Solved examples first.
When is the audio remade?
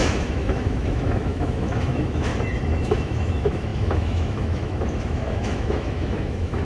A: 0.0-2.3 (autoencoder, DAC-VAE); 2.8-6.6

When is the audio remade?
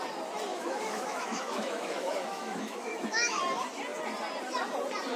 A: 0.5-3.4 (autoencoder, DAC-VAE)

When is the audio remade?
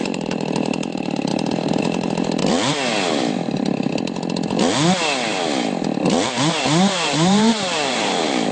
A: 0.0-2.4 (vocoder, BigVGAN v2); 6.6-8.5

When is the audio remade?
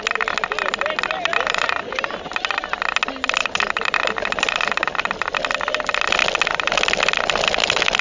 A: 1.3-2.0 (vocoder, BigVGAN v2); 3.4-5.0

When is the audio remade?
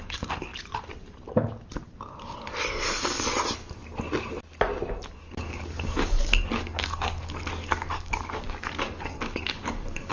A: 0.0-0.5 (codec, DAC); 5.2-10.1